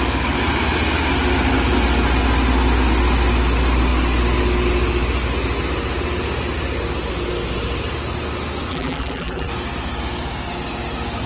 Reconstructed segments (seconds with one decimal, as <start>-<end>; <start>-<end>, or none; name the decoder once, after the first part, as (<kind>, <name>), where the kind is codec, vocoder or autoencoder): 8.7-9.5 (vocoder, BigVGAN v2)